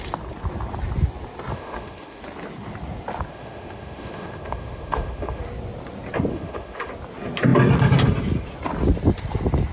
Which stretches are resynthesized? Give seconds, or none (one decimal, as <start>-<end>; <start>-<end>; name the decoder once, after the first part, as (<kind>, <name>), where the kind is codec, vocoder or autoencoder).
1.5-2.2 (autoencoder, DAC-VAE); 3.3-5.4; 6.3-6.9